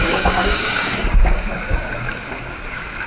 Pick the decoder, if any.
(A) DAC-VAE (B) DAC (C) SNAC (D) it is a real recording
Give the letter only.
B